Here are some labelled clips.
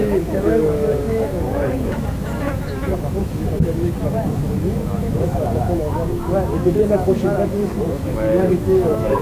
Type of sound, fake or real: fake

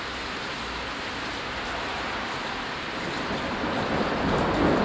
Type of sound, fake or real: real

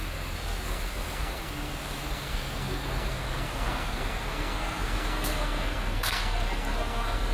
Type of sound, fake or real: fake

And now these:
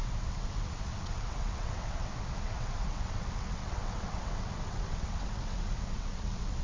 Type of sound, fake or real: fake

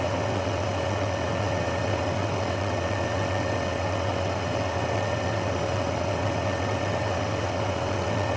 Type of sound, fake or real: fake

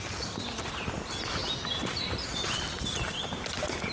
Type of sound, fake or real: real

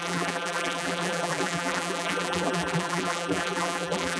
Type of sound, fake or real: fake